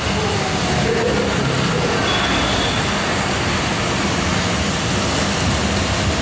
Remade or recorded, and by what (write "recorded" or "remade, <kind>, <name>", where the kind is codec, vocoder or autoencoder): recorded